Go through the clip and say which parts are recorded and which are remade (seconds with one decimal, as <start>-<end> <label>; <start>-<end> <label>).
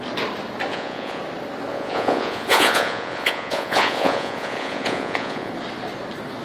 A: 0.0-0.7 recorded; 0.7-1.2 remade; 1.2-1.7 recorded; 1.7-5.5 remade; 5.5-6.4 recorded